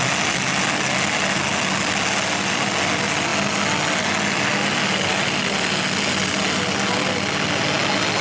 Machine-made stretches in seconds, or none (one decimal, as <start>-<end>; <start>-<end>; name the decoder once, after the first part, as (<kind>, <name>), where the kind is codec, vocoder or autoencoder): none